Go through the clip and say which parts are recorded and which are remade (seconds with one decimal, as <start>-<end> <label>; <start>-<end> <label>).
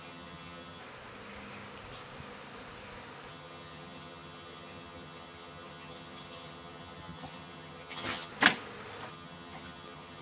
0.0-0.8 remade; 0.8-3.3 recorded; 3.3-8.3 remade; 8.3-9.1 recorded; 9.1-10.2 remade